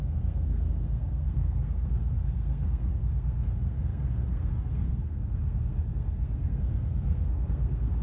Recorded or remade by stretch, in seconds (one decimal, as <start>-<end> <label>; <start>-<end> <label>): 0.0-8.0 remade